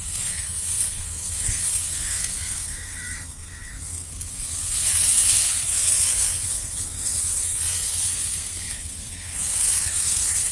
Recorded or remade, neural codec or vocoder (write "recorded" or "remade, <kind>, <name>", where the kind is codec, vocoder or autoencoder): remade, codec, SNAC